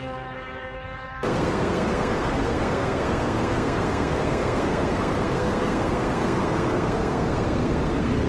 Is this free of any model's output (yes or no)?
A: no